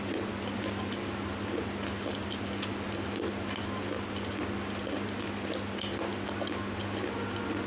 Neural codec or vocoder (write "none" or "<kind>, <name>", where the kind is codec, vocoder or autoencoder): none